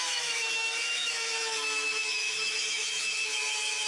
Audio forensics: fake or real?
fake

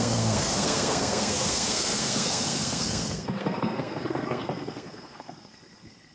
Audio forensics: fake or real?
fake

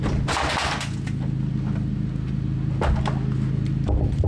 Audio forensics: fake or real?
real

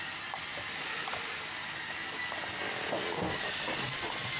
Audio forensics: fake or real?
real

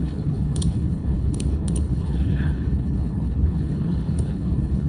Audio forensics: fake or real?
fake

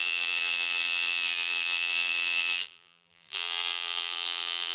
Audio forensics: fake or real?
fake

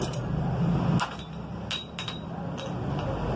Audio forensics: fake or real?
real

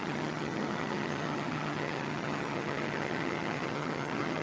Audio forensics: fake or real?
fake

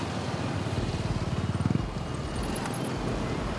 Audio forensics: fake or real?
real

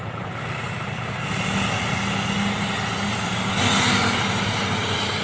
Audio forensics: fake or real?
real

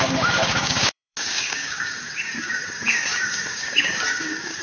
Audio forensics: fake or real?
fake